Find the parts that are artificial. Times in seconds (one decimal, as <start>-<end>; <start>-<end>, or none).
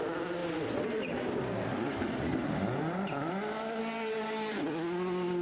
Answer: none